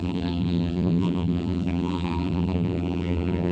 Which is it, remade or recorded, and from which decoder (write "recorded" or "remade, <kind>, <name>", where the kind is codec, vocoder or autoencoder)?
remade, vocoder, BigVGAN v2